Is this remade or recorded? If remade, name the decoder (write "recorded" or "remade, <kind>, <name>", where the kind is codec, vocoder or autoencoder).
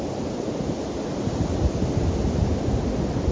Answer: recorded